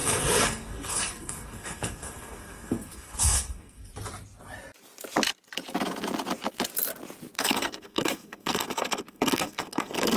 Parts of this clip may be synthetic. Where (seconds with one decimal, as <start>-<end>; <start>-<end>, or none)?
0.0-3.9; 7.4-10.2